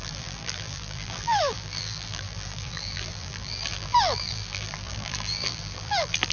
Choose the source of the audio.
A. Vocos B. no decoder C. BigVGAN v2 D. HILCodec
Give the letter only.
C